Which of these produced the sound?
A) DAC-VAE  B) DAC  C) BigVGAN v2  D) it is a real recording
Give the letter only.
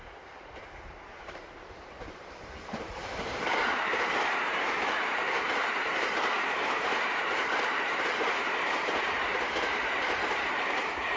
C